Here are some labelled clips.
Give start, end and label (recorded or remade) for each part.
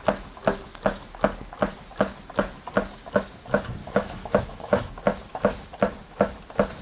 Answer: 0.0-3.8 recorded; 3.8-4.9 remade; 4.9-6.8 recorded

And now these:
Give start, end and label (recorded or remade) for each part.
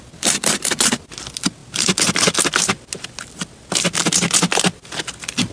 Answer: 0.0-5.5 recorded